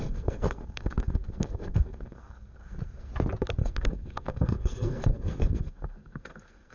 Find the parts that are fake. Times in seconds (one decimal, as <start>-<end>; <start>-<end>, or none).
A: 0.0-3.1; 3.6-6.7